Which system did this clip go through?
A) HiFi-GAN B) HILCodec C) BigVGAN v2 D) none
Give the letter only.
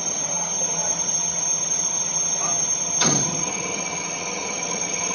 A